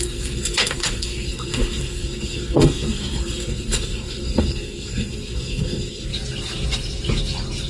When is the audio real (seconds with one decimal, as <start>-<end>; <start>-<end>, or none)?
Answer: 6.1-7.7